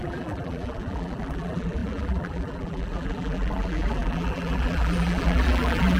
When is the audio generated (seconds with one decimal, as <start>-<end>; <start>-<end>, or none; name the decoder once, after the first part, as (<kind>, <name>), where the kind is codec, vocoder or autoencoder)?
0.0-6.0 (vocoder, BigVGAN v2)